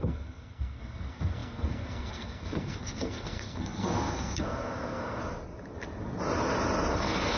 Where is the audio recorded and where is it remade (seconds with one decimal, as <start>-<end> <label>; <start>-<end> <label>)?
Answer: 0.0-5.2 remade; 5.2-6.9 recorded; 6.9-7.4 remade